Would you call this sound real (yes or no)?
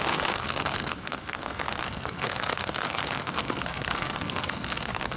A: no